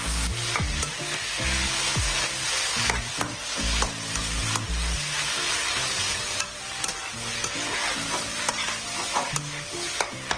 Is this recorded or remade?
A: recorded